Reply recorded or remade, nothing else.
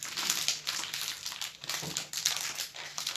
recorded